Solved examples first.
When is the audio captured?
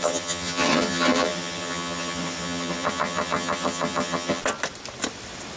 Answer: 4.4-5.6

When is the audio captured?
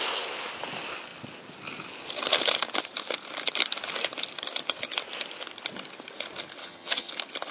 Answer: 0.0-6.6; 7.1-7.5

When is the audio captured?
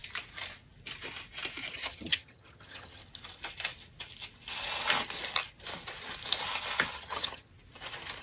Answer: 0.0-1.7; 3.0-6.9; 7.5-8.2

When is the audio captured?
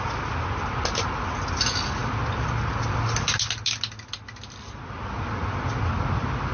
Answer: 0.0-6.5